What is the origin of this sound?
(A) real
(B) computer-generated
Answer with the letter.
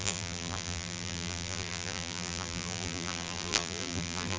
B